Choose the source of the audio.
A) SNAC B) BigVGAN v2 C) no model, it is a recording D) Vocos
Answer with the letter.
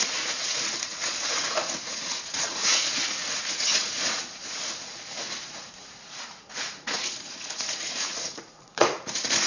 D